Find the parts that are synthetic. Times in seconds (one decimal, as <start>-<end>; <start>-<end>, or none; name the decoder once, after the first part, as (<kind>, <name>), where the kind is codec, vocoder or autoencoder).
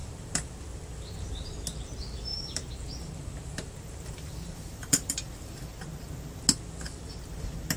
0.0-0.6 (vocoder, BigVGAN v2); 2.3-5.5